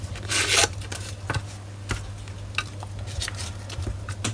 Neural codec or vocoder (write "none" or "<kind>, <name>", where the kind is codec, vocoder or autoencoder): none